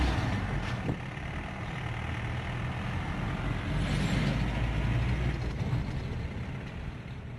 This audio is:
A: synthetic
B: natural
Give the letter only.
B